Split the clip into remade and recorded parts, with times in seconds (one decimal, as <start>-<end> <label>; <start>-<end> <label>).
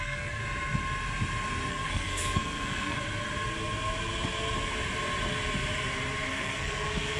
0.0-0.4 remade; 0.4-1.7 recorded; 1.7-3.0 remade; 3.0-6.3 recorded; 6.3-7.2 remade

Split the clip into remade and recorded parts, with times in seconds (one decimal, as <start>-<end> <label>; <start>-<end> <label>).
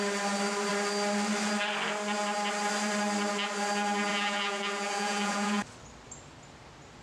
0.0-4.1 recorded; 4.1-5.6 remade; 5.6-7.0 recorded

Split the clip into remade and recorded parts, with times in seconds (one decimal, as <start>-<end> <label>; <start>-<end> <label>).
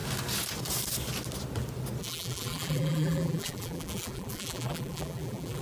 0.0-2.0 recorded; 2.0-5.6 remade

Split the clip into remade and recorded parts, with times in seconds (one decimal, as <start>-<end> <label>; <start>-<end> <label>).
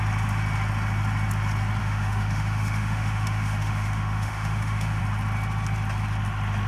0.0-1.8 recorded; 1.8-5.0 remade; 5.0-6.7 recorded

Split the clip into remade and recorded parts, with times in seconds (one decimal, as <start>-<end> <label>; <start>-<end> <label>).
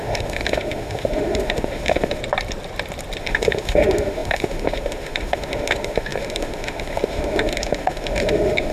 0.0-2.2 remade; 2.2-3.2 recorded; 3.2-8.7 remade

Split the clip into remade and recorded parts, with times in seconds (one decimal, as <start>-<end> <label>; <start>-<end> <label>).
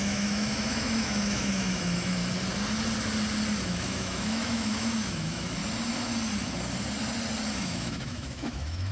0.0-2.2 remade; 2.2-3.6 recorded; 3.6-5.6 remade; 5.6-7.5 recorded; 7.5-8.9 remade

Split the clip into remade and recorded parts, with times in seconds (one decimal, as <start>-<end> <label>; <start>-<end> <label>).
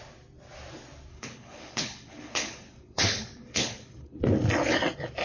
0.0-1.1 recorded; 1.1-4.2 remade; 4.2-5.2 recorded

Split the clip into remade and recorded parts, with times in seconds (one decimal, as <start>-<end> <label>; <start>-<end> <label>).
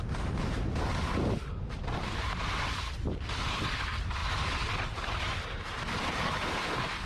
0.0-7.1 recorded